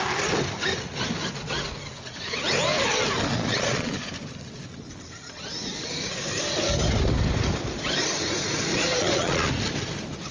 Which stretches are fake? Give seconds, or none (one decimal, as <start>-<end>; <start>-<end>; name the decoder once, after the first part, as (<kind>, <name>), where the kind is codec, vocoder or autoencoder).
3.3-4.1 (vocoder, Vocos); 8.7-9.5